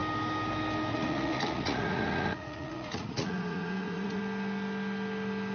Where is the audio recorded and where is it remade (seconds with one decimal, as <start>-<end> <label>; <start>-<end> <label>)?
0.0-0.9 recorded; 0.9-4.2 remade; 4.2-5.5 recorded